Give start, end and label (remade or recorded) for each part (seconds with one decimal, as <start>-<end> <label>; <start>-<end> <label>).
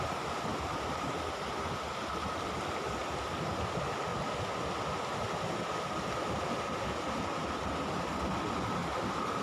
0.0-9.4 recorded